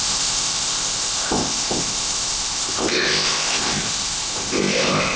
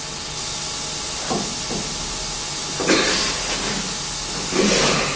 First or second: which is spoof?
first